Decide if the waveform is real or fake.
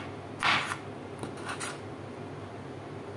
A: real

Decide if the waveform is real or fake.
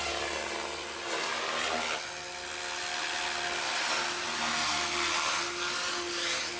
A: real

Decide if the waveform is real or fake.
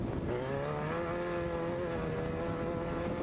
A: real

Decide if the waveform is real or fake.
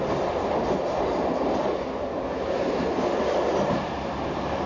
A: real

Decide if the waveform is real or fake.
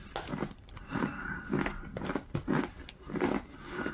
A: real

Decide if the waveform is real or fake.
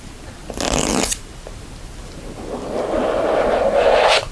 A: real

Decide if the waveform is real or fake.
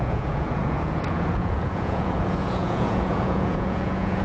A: fake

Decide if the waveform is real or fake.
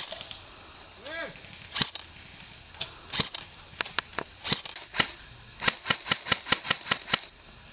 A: real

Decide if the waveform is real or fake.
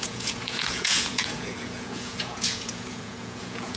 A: fake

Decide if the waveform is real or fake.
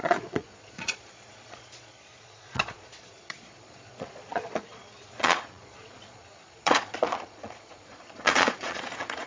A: fake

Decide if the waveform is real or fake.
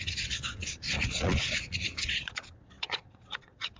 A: fake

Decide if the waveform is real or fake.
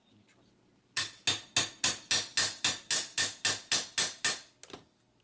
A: real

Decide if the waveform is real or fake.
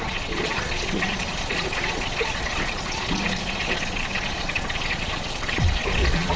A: fake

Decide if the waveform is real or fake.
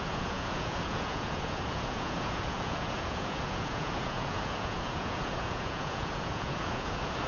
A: fake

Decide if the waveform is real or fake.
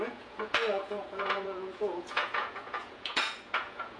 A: fake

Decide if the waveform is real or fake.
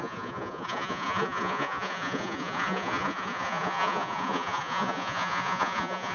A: fake